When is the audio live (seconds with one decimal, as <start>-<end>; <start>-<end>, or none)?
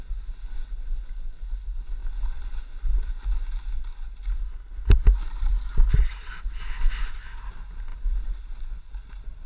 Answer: 0.0-9.5